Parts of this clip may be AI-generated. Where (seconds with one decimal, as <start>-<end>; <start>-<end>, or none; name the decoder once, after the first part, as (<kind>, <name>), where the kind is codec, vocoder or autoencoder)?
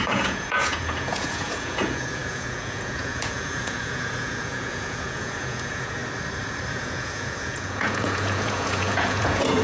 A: 0.0-6.0 (vocoder, Vocos); 6.7-9.6